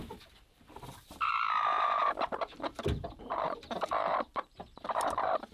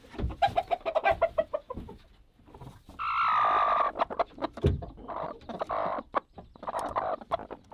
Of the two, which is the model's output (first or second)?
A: first